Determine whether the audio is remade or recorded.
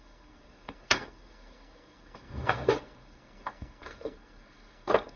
remade